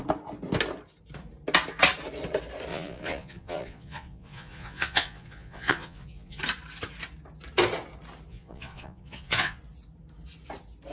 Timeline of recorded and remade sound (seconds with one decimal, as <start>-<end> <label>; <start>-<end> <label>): 0.0-2.7 recorded; 2.7-6.4 remade; 6.4-8.3 recorded; 8.3-9.6 remade; 9.6-10.9 recorded

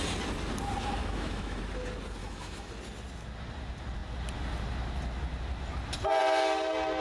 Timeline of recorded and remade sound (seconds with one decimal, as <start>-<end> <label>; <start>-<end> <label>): 0.0-1.0 recorded; 1.0-1.6 remade; 1.6-2.2 recorded; 2.2-2.7 remade; 2.7-7.0 recorded

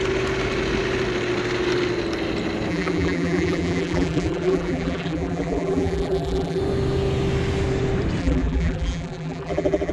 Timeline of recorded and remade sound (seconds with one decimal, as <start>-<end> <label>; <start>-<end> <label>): 0.0-2.7 recorded; 2.7-6.6 remade; 6.6-8.2 recorded; 8.2-9.9 remade

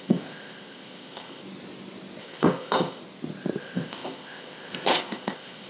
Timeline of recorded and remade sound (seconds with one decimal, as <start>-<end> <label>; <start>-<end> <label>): 0.0-1.4 remade; 1.4-2.2 recorded; 2.2-3.0 remade; 3.0-3.6 recorded; 3.6-5.7 remade

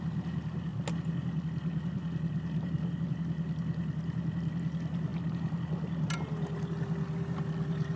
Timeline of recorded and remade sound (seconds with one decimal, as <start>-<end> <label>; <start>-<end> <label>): 0.0-8.0 recorded

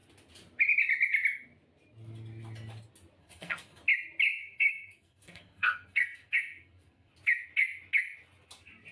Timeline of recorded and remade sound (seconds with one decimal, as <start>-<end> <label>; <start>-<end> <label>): 0.0-3.2 recorded; 3.2-3.8 remade; 3.8-4.4 recorded; 4.4-7.1 remade; 7.1-8.9 recorded

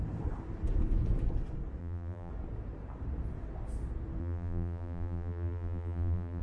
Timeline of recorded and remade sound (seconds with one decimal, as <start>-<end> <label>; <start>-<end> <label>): 0.0-1.8 recorded; 1.8-2.3 remade; 2.3-4.2 recorded; 4.2-6.4 remade

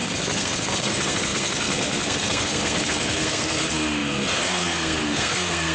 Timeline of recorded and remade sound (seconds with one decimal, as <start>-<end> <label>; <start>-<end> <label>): 0.0-5.7 remade